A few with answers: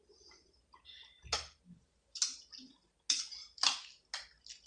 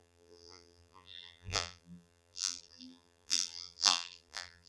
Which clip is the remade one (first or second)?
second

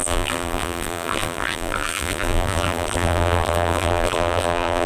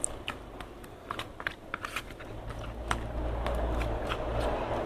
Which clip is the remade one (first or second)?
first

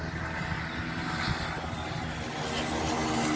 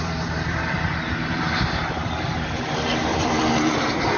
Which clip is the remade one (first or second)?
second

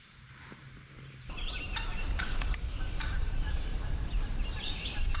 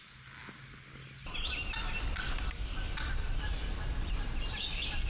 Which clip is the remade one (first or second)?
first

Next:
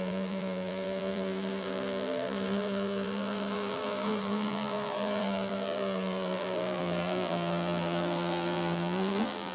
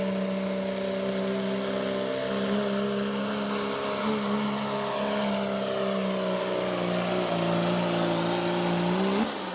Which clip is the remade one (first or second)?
first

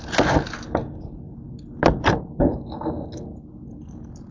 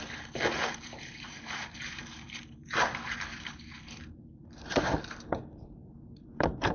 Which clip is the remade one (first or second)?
second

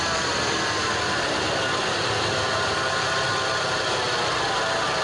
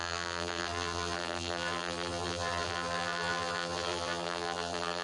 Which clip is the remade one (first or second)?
second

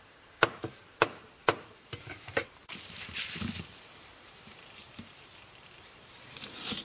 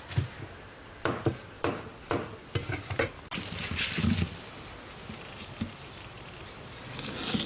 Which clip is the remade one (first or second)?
first